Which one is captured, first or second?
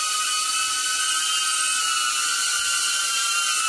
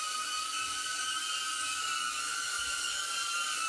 first